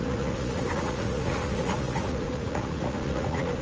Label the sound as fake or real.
fake